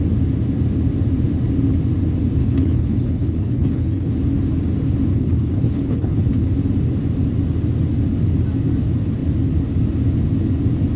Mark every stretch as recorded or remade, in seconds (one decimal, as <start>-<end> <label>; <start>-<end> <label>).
0.0-2.4 recorded; 2.4-4.1 remade; 4.1-5.1 recorded; 5.1-6.5 remade; 6.5-11.0 recorded